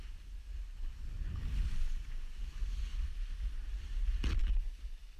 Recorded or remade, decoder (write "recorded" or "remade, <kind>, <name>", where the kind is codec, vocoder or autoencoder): recorded